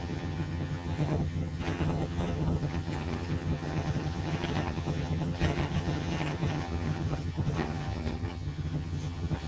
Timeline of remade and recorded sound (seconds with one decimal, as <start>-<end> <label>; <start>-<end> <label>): 0.0-9.5 remade